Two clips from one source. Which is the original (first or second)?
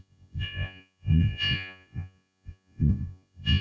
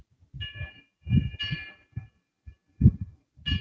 second